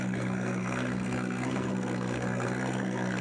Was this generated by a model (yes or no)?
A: yes